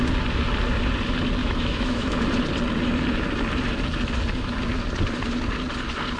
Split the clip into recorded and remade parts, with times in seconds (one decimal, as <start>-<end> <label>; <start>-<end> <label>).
0.0-1.4 recorded; 1.4-2.2 remade; 2.2-6.2 recorded